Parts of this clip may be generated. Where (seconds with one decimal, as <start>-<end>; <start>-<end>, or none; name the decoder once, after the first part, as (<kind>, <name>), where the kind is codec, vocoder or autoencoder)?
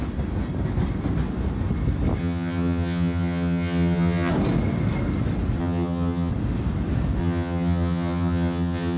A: 2.2-4.3 (vocoder, HiFi-GAN); 5.6-6.3; 7.2-9.0